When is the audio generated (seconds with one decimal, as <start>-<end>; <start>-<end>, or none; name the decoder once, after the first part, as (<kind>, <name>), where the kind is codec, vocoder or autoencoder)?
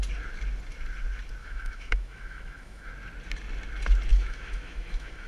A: 1.4-2.9 (autoencoder, DAC-VAE); 4.1-5.3